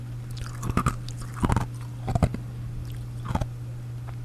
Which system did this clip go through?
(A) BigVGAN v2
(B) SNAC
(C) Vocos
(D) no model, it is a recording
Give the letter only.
D